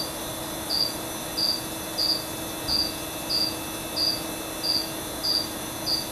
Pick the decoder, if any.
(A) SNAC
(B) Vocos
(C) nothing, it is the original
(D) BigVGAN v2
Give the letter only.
C